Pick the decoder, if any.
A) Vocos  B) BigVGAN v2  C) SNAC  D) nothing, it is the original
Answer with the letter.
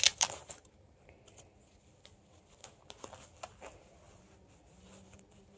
D